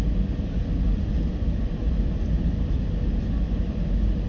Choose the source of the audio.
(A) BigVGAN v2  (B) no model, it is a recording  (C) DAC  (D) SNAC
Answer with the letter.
B